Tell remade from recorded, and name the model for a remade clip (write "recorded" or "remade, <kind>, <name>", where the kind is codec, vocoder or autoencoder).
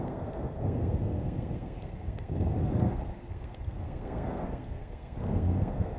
remade, codec, SNAC